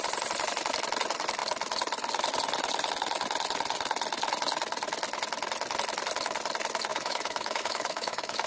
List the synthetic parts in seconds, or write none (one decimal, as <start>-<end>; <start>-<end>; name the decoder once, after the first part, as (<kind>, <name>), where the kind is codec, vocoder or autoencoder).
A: 6.9-8.5 (autoencoder, DAC-VAE)